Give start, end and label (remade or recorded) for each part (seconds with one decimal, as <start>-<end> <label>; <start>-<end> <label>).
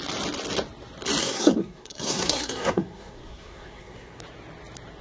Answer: 0.0-1.2 recorded; 1.2-4.2 remade; 4.2-5.0 recorded